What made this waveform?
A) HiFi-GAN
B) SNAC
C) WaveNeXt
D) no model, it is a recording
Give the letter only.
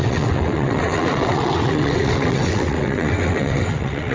C